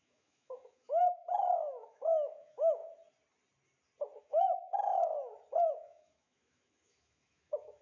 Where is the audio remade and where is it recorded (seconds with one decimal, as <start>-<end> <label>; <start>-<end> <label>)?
0.0-2.8 remade; 2.8-4.2 recorded; 4.2-5.1 remade; 5.1-5.7 recorded; 5.7-7.8 remade